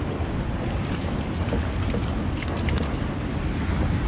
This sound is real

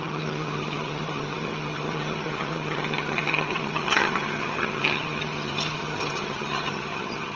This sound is fake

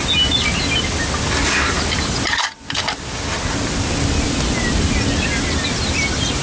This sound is real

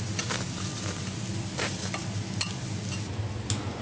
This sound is real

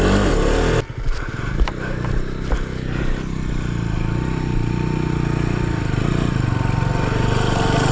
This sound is real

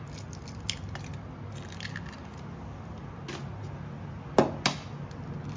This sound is real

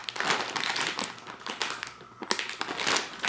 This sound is real